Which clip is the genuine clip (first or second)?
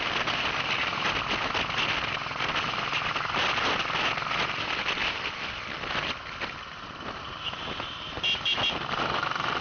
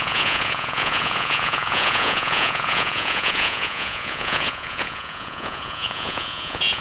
first